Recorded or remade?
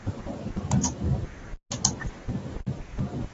recorded